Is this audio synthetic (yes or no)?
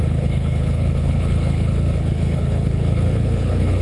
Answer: yes